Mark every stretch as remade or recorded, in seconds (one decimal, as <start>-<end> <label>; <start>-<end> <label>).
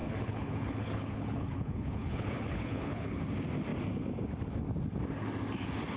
0.0-3.2 remade; 3.2-6.0 recorded